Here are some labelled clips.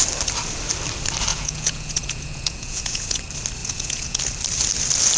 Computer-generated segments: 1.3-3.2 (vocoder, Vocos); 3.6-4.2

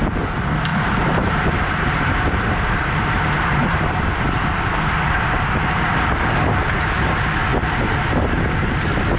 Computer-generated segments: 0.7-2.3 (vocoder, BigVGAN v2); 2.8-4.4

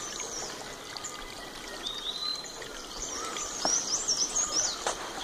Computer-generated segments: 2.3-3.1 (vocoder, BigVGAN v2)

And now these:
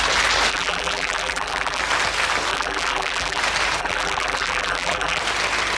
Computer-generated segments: 0.5-1.8 (vocoder, BigVGAN v2); 2.5-3.4; 3.8-5.2

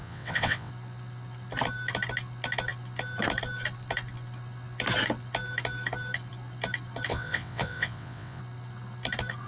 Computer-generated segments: 0.0-0.7 (vocoder, WaveNeXt); 7.1-8.4

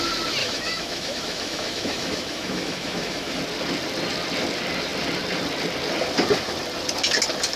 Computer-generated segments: 0.4-3.4 (autoencoder, DAC-VAE)

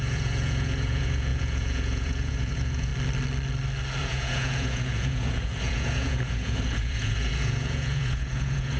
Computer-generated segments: 0.0-2.9 (vocoder, Vocos); 4.0-8.8

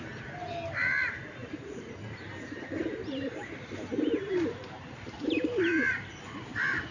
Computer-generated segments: 1.4-2.0 (vocoder, BigVGAN v2); 3.0-5.8